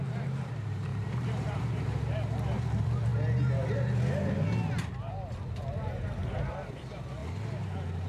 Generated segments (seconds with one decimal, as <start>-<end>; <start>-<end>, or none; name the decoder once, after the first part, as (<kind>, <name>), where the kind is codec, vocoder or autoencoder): 0.0-3.1 (vocoder, BigVGAN v2); 5.0-7.2